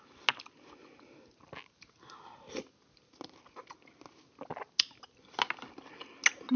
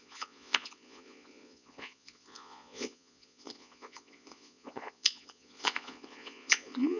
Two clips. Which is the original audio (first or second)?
first